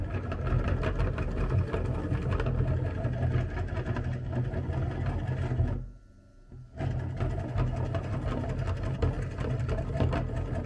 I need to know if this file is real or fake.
real